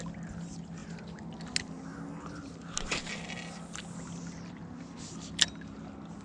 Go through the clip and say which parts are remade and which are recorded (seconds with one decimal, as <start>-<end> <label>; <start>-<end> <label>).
0.0-6.2 recorded